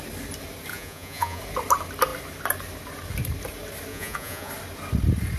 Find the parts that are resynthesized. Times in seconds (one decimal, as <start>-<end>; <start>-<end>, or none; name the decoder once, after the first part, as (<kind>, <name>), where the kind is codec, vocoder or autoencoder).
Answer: 0.7-1.4 (vocoder, Vocos); 3.9-4.5